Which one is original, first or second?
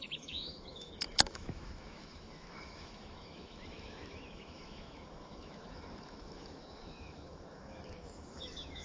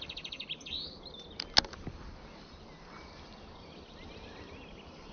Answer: second